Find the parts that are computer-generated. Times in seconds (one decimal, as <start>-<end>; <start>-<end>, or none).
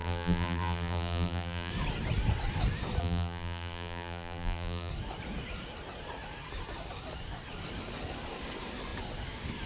0.0-1.7; 3.0-4.9